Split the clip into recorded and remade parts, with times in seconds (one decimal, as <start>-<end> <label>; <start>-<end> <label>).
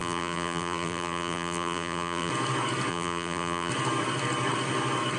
0.0-2.3 remade; 2.3-2.9 recorded; 2.9-3.7 remade; 3.7-5.2 recorded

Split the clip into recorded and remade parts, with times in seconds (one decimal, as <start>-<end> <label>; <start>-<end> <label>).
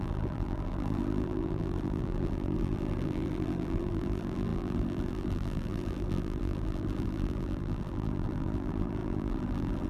0.0-9.9 remade